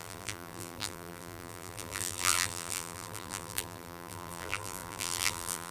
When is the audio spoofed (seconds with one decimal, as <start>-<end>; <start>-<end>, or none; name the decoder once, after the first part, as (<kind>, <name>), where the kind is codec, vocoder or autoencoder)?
0.0-5.7 (vocoder, BigVGAN v2)